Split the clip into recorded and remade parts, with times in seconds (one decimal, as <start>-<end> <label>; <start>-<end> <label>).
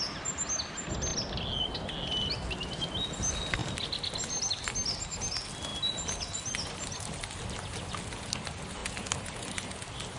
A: 0.0-10.2 recorded